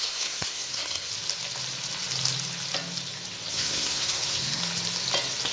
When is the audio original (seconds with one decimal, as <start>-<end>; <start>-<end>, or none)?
1.1-3.5; 4.6-5.5